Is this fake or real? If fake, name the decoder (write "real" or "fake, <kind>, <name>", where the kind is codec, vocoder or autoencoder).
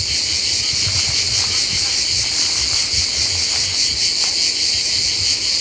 real